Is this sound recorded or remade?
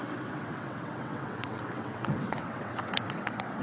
remade